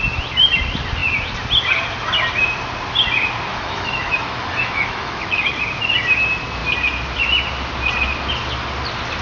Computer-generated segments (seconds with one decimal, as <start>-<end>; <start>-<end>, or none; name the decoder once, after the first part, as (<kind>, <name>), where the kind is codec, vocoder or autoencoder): 3.5-5.5 (autoencoder, DAC-VAE)

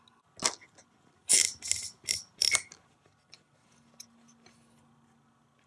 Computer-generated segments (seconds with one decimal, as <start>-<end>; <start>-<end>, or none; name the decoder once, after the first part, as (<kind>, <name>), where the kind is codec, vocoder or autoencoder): 1.2-2.1 (vocoder, BigVGAN v2)

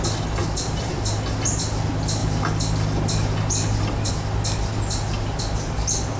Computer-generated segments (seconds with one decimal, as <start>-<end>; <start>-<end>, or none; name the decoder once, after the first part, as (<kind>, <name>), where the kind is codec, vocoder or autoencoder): 0.4-0.9 (vocoder, BigVGAN v2)

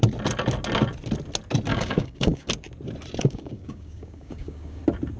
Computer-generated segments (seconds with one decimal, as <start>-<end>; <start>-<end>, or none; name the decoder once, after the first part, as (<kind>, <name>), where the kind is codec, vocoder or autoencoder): 1.7-2.5 (codec, DAC); 3.2-4.8

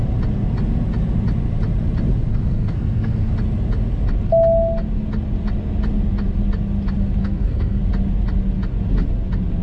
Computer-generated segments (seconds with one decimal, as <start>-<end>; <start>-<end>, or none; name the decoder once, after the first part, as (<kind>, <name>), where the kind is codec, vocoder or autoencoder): 2.3-3.3 (codec, SNAC); 7.2-7.8